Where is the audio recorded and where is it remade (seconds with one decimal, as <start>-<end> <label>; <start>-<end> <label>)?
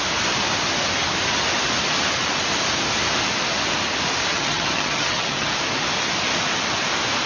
0.0-4.3 recorded; 4.3-5.5 remade; 5.5-7.3 recorded